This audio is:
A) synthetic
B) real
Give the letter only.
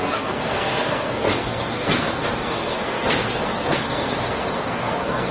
A